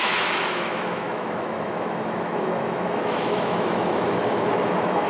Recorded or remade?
remade